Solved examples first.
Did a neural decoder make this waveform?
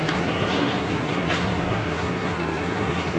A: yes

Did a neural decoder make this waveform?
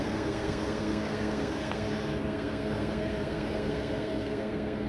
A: yes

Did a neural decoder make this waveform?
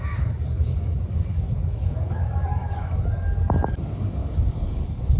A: yes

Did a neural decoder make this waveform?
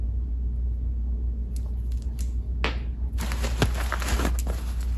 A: no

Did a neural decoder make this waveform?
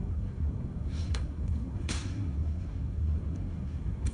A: yes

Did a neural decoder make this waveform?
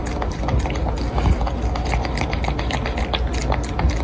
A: no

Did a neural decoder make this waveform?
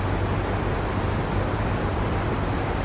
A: no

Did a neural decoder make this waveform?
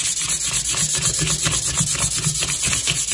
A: no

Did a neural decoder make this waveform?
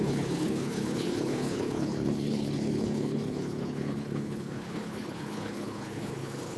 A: yes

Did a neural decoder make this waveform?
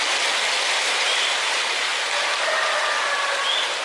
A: no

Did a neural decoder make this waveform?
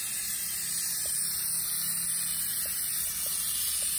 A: no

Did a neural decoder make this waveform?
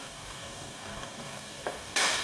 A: yes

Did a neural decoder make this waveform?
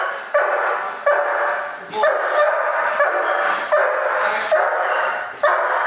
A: no